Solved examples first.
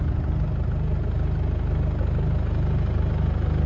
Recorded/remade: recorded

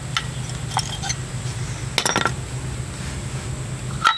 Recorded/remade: recorded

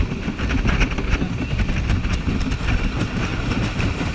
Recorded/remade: recorded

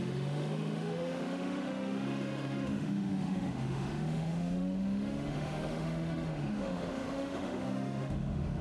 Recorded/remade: remade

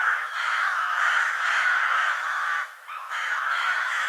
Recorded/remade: remade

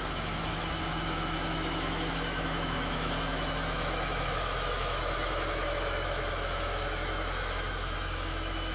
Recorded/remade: remade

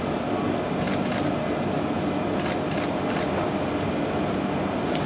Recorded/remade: recorded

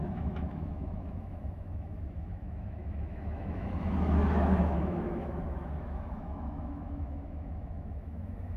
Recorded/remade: remade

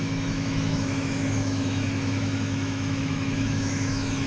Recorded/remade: remade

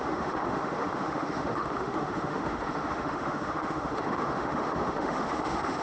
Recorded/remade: remade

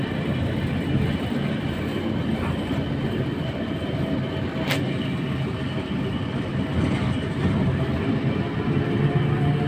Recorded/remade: recorded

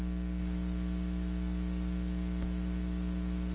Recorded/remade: recorded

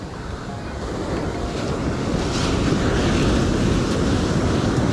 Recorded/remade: recorded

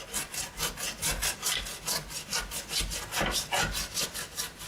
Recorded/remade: recorded